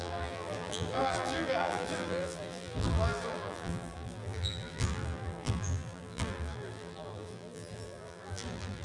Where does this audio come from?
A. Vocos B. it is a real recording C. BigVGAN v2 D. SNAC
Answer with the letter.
C